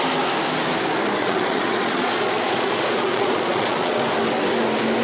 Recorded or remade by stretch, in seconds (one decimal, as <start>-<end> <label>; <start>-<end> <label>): 0.0-1.2 recorded; 1.2-4.0 remade; 4.0-5.0 recorded